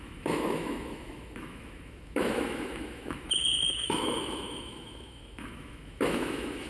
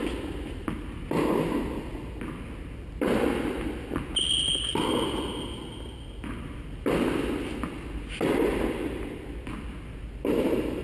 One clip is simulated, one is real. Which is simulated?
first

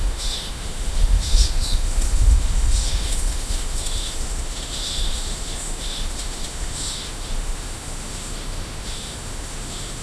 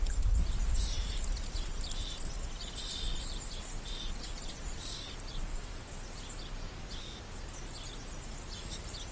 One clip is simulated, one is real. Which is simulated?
first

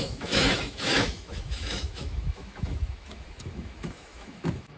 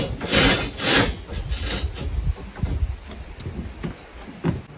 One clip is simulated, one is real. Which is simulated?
first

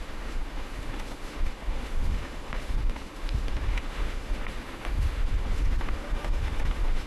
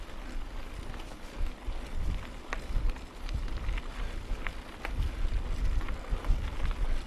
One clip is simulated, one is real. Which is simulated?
first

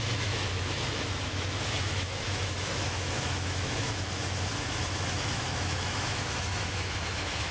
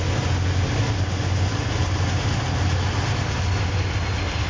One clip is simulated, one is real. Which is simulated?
first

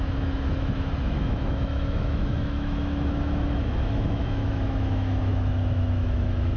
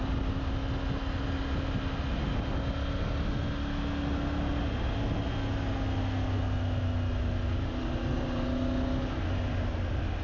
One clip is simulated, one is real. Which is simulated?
first